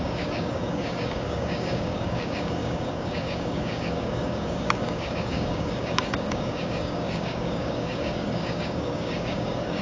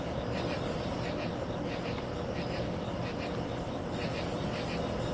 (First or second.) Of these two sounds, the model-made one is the first